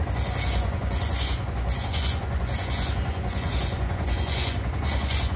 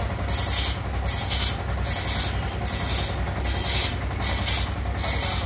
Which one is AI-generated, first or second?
first